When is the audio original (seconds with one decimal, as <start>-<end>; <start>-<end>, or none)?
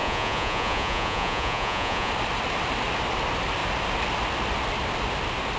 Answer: 2.1-5.6